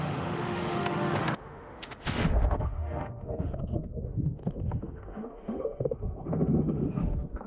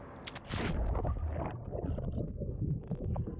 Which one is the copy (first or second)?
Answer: first